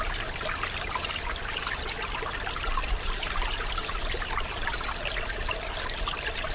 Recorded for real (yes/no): yes